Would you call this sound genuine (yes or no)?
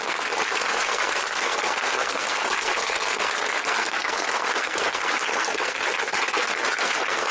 no